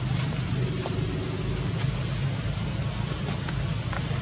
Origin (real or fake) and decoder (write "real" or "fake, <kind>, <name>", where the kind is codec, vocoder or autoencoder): real